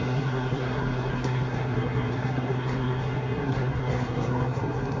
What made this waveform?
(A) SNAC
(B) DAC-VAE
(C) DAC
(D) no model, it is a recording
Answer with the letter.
A